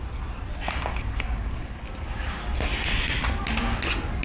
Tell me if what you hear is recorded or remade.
recorded